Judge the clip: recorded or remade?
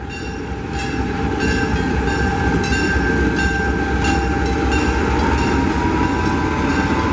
recorded